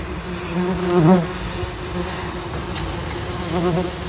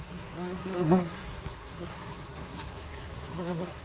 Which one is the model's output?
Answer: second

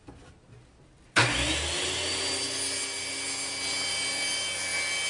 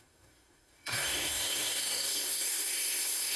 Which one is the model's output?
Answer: second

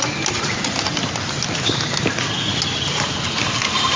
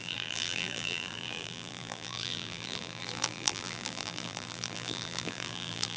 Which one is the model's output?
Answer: second